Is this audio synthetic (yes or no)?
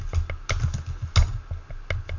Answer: no